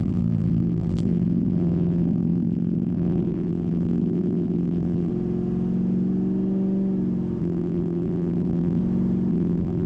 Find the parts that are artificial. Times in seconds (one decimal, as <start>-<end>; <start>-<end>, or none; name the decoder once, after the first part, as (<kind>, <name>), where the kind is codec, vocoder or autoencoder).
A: 0.0-5.1 (vocoder, BigVGAN v2); 7.4-8.8; 9.3-9.9